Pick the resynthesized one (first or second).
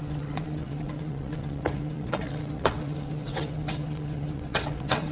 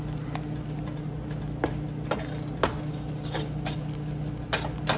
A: first